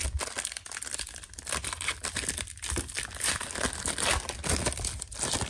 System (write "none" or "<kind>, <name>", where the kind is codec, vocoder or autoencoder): none